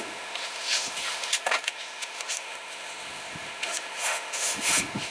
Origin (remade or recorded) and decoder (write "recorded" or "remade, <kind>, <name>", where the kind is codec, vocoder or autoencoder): remade, autoencoder, DAC-VAE